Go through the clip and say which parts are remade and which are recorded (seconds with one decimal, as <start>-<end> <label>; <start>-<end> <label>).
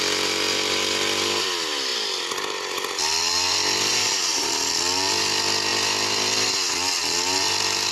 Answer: 0.0-3.9 recorded; 3.9-4.5 remade; 4.5-7.9 recorded